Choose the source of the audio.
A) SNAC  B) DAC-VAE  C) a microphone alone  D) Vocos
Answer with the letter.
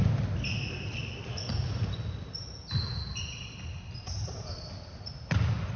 C